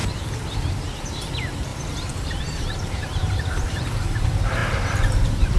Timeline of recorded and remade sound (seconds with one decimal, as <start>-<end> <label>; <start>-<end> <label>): 0.0-0.7 recorded; 0.7-1.7 remade; 1.7-2.4 recorded; 2.4-5.6 remade